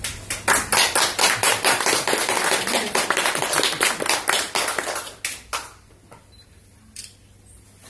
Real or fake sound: real